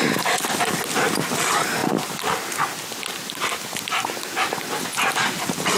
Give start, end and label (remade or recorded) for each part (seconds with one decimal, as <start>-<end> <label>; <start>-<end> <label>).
0.0-5.8 recorded